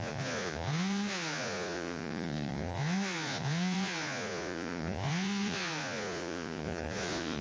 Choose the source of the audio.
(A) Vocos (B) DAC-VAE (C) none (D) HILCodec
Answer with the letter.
A